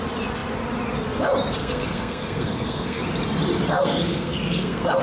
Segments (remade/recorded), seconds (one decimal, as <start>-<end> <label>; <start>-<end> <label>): 0.0-1.6 recorded; 1.6-3.0 remade; 3.0-3.7 recorded; 3.7-5.0 remade